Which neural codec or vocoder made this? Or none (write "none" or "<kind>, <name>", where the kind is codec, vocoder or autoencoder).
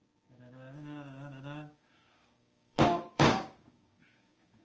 codec, DAC